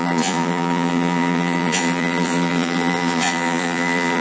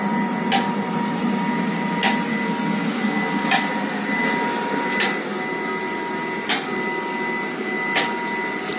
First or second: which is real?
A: second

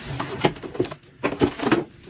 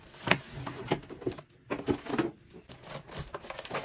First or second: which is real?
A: second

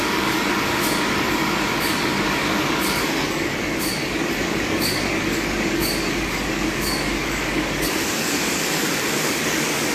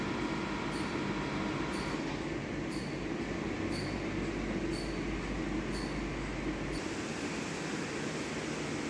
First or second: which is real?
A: second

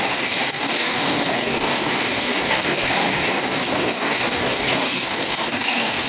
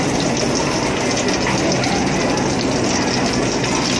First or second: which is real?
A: second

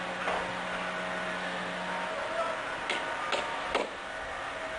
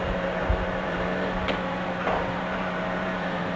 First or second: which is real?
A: first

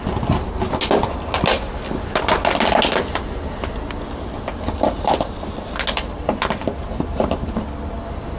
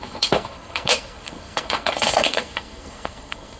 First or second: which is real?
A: first